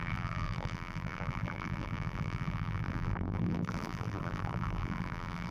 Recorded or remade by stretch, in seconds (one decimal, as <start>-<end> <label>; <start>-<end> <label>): 0.0-5.5 remade